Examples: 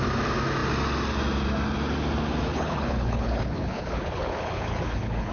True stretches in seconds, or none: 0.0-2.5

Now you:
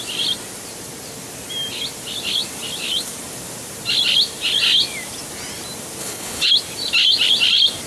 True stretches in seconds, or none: 0.0-6.0; 6.5-7.9

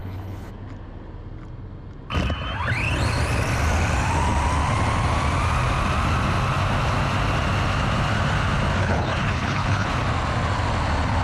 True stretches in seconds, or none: 0.5-8.8; 9.9-11.2

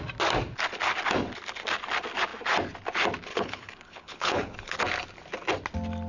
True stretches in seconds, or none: 0.0-3.3; 4.8-6.1

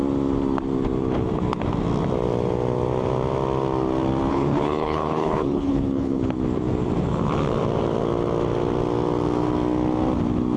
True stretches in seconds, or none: 0.0-4.3; 6.2-10.6

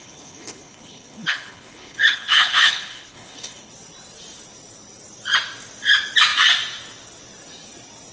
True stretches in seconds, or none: 3.7-8.1

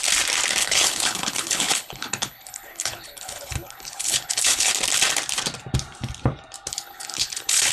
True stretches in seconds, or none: 0.0-0.6; 4.7-6.7